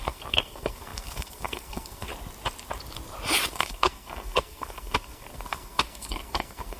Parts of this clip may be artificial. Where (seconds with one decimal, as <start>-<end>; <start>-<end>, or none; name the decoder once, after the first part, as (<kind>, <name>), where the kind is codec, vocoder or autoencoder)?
0.0-2.1 (codec, SNAC); 3.5-6.8